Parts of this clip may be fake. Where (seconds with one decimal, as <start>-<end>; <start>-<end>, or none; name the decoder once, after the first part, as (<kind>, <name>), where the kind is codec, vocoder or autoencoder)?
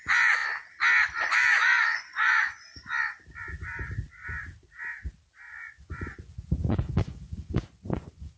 0.0-0.4 (vocoder, Vocos); 1.2-2.8; 5.6-8.4